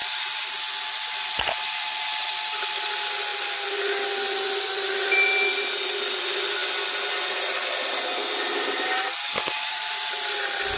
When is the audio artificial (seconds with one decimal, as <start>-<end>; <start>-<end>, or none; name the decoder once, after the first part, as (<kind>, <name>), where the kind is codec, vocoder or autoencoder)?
0.0-3.3 (vocoder, BigVGAN v2); 4.6-6.6; 9.7-10.8